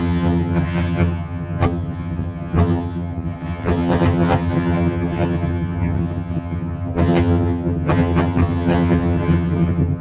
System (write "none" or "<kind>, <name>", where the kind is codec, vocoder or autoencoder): vocoder, HiFi-GAN